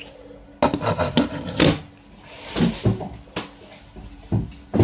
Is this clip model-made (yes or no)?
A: no